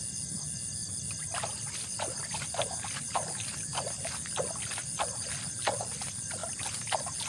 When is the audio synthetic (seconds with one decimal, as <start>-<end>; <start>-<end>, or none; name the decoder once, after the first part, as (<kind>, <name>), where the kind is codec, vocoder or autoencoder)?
none